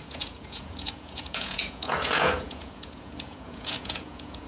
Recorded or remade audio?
remade